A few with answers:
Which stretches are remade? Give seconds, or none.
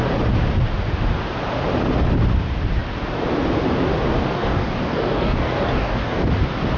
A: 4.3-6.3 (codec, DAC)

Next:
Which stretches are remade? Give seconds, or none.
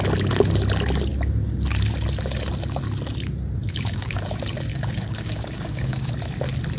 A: 3.6-4.2 (codec, DAC); 4.7-6.1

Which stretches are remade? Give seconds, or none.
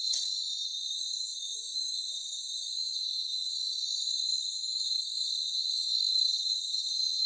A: 0.0-7.3 (codec, DAC)